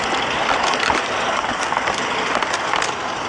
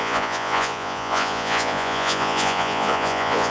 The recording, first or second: first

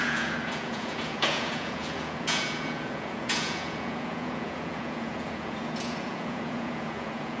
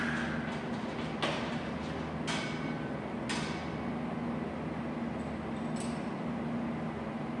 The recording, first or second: second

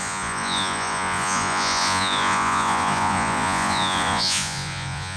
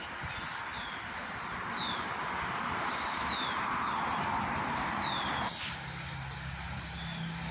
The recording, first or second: second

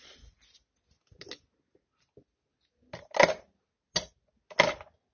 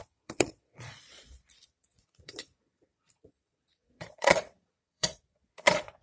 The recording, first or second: first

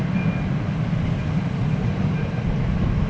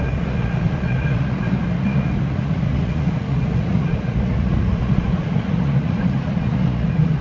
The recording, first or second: first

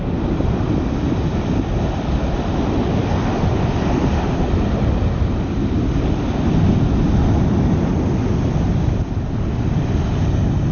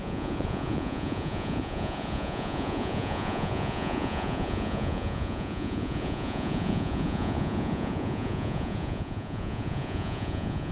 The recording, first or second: first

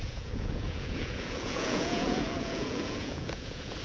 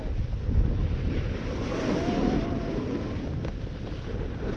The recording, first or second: second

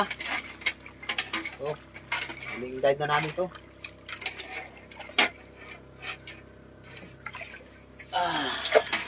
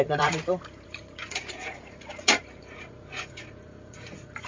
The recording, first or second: first